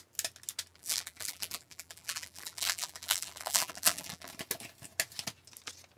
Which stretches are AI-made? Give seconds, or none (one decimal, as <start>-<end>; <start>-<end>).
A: 0.7-4.3